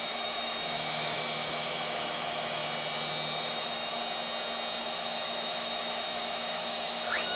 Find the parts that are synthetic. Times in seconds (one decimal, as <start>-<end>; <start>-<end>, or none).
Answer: 0.0-2.6; 3.4-4.0; 4.8-7.3